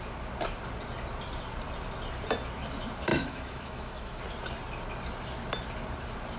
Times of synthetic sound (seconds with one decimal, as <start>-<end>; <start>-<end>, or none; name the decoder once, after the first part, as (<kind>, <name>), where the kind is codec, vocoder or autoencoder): 3.1-4.2 (autoencoder, DAC-VAE)